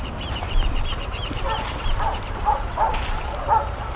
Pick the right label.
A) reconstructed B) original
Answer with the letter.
A